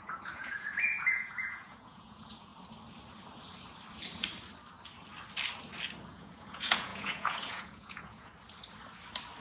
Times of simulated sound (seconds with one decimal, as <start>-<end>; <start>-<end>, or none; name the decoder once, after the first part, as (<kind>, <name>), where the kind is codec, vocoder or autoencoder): 0.0-2.5 (vocoder, Vocos); 6.1-8.3